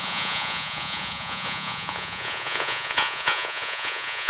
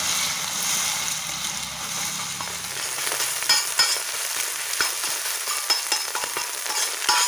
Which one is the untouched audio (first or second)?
second